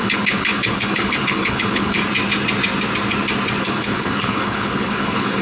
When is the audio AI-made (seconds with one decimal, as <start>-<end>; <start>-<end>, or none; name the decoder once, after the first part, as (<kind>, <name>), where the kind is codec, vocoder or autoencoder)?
0.0-2.0 (codec, HILCodec); 3.6-5.4